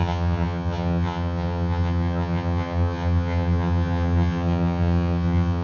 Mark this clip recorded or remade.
remade